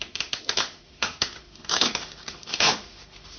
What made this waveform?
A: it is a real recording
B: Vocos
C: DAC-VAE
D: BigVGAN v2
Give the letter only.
C